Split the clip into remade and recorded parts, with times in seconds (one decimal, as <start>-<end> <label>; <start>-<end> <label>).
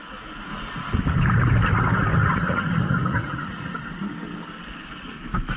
0.0-2.2 recorded; 2.2-4.1 remade; 4.1-5.6 recorded